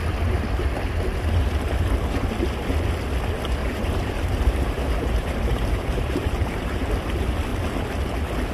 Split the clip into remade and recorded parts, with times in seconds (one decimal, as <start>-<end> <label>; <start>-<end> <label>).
0.0-3.6 recorded; 3.6-6.9 remade; 6.9-8.5 recorded